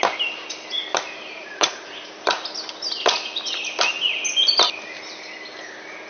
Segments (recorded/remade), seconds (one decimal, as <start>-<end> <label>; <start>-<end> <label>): 0.0-1.4 recorded; 1.4-2.1 remade; 2.1-6.1 recorded